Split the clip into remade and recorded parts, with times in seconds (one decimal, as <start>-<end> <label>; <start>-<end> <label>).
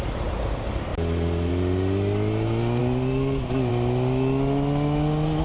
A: 0.0-5.4 recorded